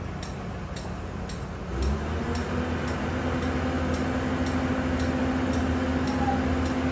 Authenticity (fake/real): real